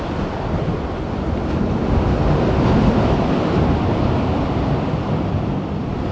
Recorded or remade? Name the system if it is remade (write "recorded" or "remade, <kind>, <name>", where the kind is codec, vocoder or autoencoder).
recorded